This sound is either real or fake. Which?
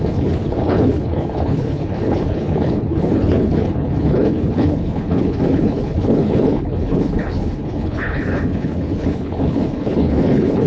fake